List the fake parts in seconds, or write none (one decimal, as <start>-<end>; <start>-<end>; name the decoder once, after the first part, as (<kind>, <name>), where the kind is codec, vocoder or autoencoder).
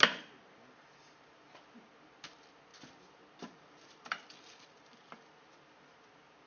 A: 2.7-5.5 (vocoder, BigVGAN v2)